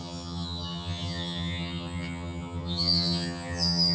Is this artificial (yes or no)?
yes